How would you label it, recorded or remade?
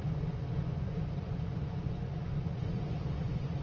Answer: remade